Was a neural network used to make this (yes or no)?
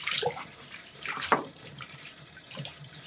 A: yes